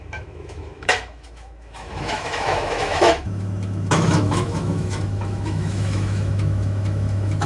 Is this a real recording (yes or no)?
no